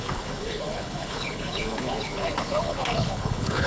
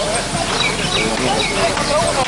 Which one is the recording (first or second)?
second